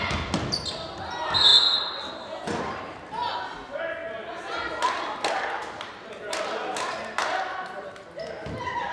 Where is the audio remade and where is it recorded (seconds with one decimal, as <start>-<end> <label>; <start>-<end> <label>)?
0.0-8.9 recorded